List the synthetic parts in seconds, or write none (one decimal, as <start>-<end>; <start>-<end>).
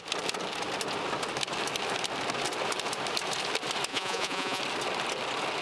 3.9-4.6